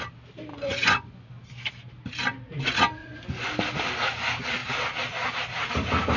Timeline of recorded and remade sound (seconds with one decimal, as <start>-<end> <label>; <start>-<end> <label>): 0.0-0.5 recorded; 0.5-1.3 remade; 1.3-3.0 recorded; 3.0-3.6 remade; 3.6-6.2 recorded